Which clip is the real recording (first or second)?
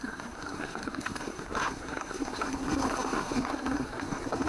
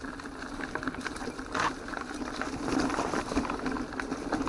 second